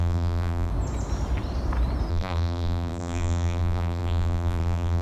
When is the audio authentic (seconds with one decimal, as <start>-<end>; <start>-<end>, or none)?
0.7-2.1